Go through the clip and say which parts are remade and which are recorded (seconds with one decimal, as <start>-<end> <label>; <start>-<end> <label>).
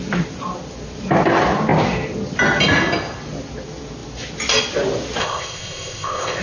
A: 0.0-5.2 recorded; 5.2-6.4 remade